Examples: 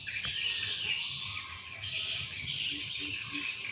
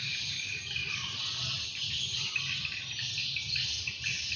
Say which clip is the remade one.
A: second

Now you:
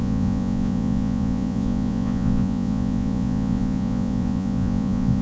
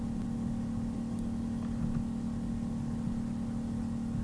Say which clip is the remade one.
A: first